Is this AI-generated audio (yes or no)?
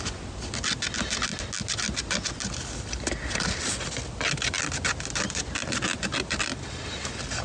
no